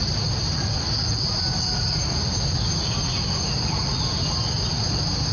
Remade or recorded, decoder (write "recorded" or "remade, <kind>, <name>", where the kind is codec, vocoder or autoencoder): recorded